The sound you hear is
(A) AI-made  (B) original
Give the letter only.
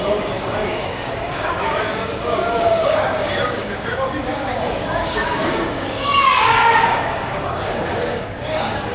A